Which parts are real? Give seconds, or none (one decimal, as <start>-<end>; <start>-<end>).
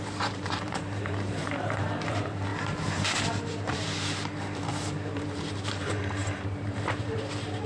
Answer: none